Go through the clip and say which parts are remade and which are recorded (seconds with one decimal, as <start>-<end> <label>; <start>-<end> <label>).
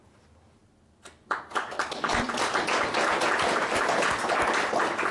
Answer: 0.0-5.1 recorded